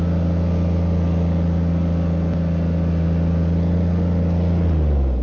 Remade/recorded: recorded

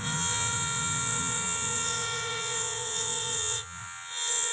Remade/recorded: remade